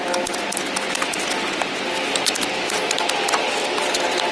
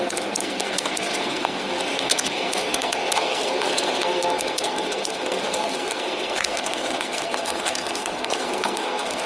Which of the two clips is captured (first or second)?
first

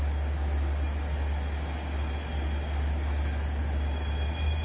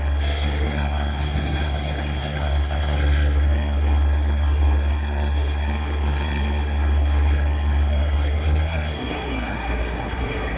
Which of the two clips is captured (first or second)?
first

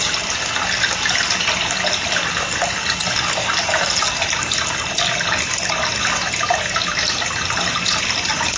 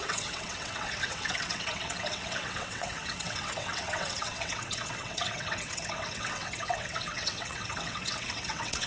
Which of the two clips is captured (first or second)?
first